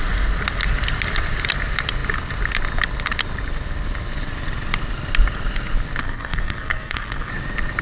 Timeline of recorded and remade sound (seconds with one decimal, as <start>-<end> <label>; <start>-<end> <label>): 0.0-6.0 recorded; 6.0-7.3 remade; 7.3-7.8 recorded